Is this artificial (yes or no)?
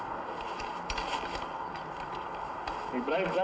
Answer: no